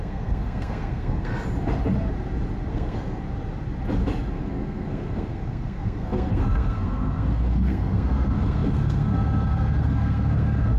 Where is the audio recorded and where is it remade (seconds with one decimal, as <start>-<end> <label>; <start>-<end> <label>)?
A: 0.0-1.3 remade; 1.3-2.7 recorded; 2.7-3.2 remade; 3.2-4.3 recorded; 4.3-10.8 remade